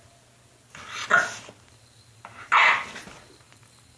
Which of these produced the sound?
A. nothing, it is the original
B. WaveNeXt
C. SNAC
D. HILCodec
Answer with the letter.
A